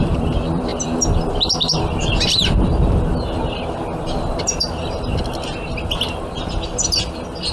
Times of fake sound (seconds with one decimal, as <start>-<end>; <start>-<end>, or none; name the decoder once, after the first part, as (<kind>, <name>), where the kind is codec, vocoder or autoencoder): 0.0-4.8 (vocoder, BigVGAN v2); 6.4-7.5